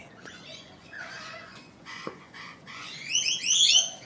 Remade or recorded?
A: remade